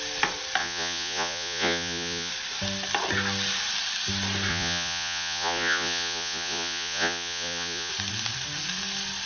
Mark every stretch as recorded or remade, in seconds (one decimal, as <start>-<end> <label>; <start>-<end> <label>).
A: 0.0-0.6 recorded; 0.6-2.3 remade; 2.3-4.5 recorded; 4.5-7.9 remade; 7.9-9.3 recorded